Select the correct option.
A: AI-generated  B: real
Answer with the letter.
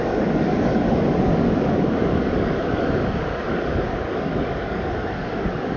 A